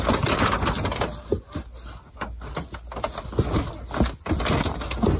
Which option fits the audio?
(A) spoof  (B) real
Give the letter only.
B